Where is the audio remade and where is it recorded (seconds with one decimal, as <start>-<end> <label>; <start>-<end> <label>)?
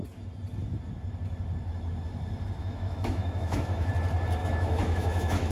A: 0.0-2.6 recorded; 2.6-3.9 remade; 3.9-4.4 recorded; 4.4-5.5 remade